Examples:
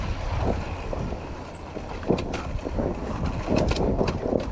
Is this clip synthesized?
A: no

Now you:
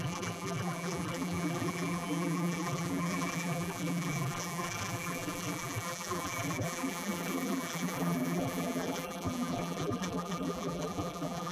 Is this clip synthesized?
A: yes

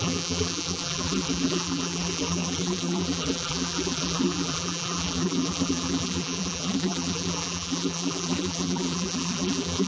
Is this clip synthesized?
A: yes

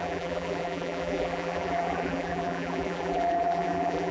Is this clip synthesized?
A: yes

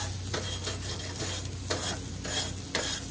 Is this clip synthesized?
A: no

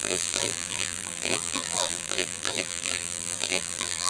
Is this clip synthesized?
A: yes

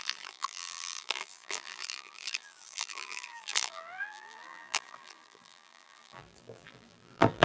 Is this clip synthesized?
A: yes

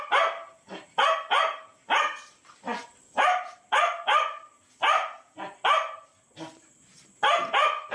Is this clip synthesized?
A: no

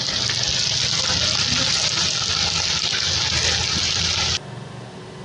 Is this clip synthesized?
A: no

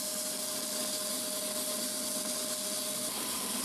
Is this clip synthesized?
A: no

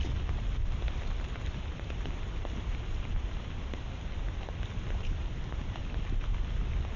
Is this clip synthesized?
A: yes